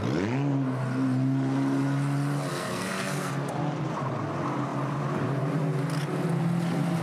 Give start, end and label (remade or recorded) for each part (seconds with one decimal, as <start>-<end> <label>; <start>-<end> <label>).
0.0-2.5 recorded; 2.5-3.3 remade; 3.3-7.0 recorded